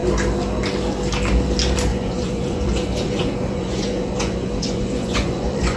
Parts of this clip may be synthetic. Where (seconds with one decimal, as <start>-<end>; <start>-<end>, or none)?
1.9-5.8